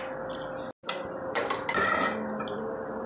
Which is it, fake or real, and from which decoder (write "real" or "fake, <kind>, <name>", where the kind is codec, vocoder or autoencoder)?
real